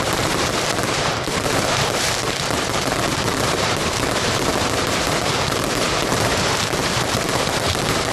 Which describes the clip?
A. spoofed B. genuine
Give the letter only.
A